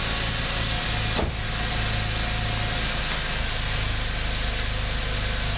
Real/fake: real